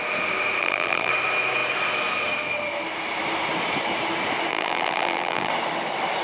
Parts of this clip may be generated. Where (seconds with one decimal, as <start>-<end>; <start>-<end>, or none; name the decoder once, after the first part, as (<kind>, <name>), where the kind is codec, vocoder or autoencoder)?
0.6-1.1 (vocoder, BigVGAN v2); 4.5-5.5